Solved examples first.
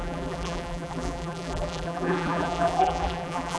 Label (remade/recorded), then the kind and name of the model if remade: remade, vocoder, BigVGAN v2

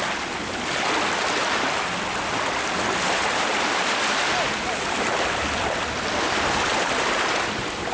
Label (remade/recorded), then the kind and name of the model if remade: recorded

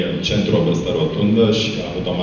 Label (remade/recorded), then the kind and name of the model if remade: recorded